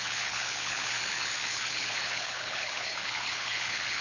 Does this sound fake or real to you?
fake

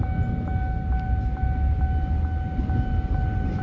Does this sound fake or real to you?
real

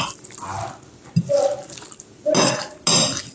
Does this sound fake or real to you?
real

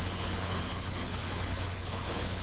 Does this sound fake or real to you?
fake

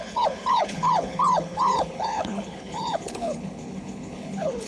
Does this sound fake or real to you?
fake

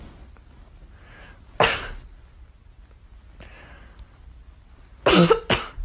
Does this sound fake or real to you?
real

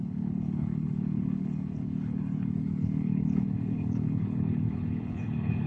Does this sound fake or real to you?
fake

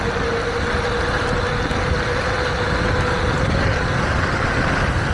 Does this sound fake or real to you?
real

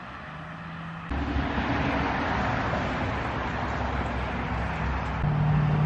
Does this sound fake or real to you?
real